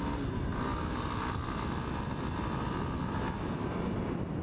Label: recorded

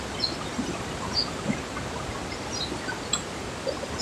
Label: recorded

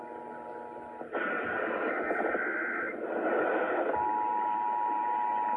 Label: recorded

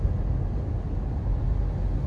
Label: recorded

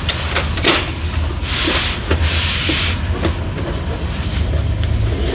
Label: recorded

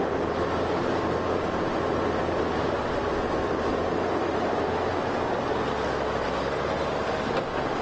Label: recorded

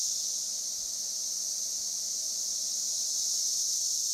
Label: recorded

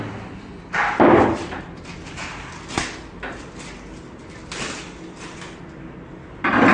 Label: recorded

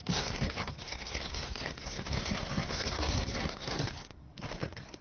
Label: remade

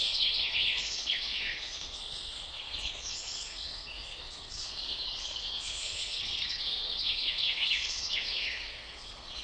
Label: remade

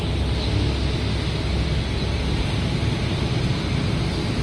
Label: recorded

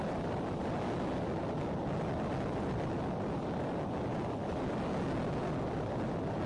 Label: recorded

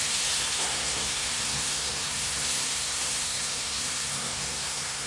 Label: remade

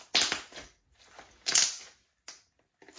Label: recorded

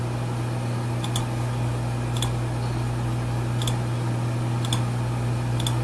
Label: recorded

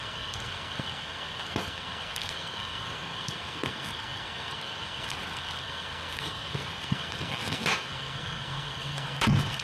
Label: remade